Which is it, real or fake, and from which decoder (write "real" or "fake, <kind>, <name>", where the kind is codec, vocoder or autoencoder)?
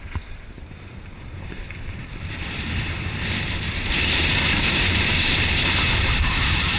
fake, vocoder, BigVGAN v2